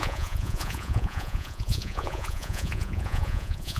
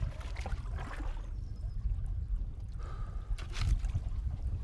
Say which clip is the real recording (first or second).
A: second